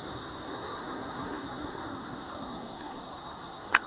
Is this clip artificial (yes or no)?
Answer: yes